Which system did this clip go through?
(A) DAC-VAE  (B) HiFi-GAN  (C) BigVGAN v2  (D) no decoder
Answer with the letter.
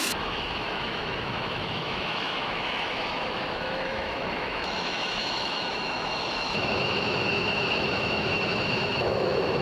A